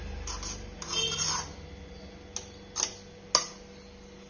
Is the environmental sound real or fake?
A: real